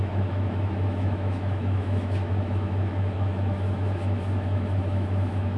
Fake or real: fake